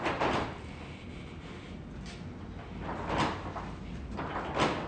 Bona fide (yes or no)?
yes